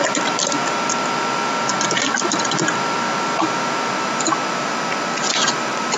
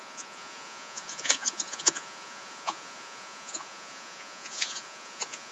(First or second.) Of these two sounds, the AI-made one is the second